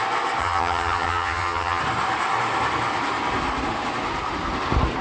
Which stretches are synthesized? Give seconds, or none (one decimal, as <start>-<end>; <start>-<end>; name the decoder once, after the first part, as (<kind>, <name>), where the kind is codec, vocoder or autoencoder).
0.4-1.8 (vocoder, HiFi-GAN)